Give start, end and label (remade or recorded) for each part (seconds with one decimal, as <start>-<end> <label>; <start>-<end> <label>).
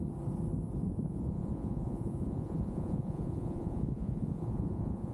0.0-0.9 recorded; 0.9-5.1 remade